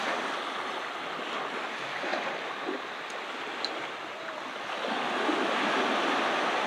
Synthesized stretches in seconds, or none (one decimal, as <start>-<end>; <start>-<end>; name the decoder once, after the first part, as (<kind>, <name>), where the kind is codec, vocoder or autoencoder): 2.1-2.8 (vocoder, BigVGAN v2)